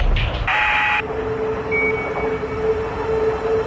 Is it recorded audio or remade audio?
recorded